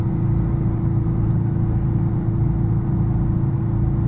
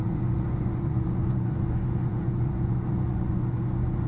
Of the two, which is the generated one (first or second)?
second